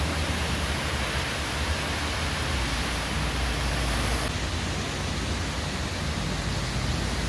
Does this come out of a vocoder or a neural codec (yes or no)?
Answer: no